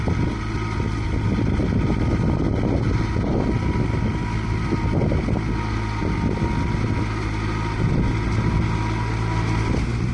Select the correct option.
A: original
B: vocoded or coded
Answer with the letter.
A